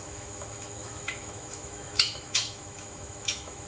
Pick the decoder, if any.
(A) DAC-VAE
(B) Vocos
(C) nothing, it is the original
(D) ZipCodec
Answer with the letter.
A